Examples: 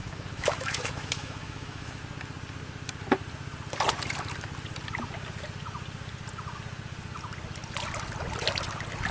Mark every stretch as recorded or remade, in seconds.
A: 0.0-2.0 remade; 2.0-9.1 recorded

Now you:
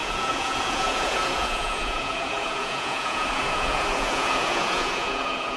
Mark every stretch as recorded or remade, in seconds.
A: 0.0-5.6 remade

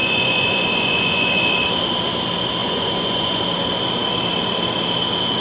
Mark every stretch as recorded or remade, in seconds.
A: 0.0-1.4 remade; 1.4-2.6 recorded; 2.6-3.4 remade; 3.4-5.4 recorded

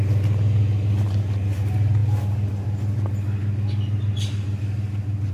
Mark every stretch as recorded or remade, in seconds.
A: 0.0-5.3 recorded